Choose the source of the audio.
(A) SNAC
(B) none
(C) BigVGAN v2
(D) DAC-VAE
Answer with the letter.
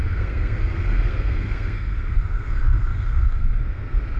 A